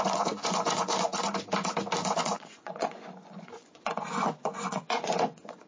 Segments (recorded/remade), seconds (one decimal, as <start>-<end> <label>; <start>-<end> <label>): 0.0-1.1 remade; 1.1-2.2 recorded; 2.2-5.7 remade